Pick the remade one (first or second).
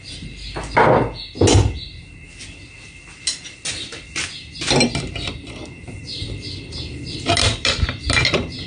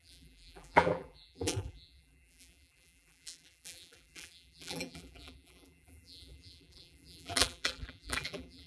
second